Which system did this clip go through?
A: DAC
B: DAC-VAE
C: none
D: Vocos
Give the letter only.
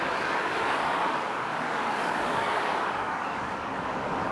A